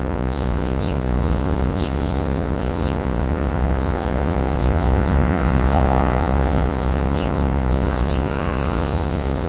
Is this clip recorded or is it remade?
remade